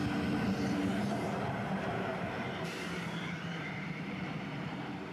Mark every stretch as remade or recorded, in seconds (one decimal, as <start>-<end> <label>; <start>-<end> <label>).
0.0-1.1 recorded; 1.1-5.1 remade